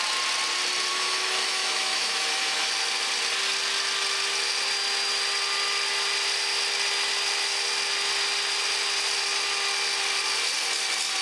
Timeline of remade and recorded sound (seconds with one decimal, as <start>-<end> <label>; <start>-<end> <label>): 0.0-0.9 recorded; 0.9-2.7 remade; 2.7-11.2 recorded